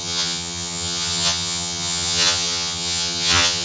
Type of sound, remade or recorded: remade